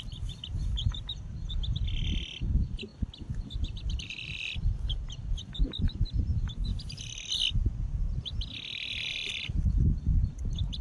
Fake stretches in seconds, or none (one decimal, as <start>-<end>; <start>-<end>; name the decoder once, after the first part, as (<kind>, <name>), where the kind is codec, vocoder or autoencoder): none